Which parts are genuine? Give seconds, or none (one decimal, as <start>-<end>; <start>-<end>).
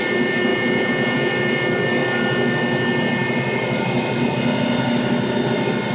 0.0-0.5; 1.3-5.9